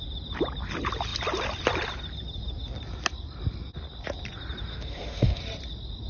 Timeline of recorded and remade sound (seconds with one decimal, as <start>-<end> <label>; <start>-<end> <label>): 0.0-4.7 recorded; 4.7-5.4 remade; 5.4-6.1 recorded